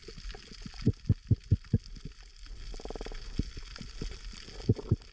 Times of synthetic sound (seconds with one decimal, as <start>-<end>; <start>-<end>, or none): none